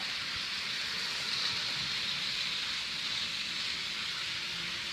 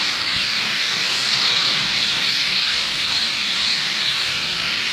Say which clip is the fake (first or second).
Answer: second